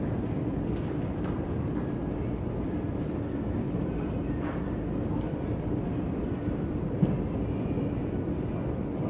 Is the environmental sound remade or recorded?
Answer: recorded